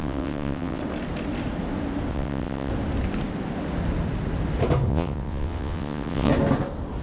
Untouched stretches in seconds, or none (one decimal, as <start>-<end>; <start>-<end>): 0.8-2.1; 2.7-4.9; 6.3-7.0